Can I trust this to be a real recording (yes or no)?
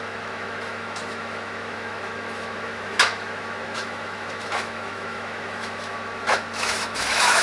no